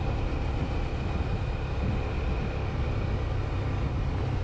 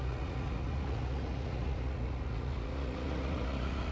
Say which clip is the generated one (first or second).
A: second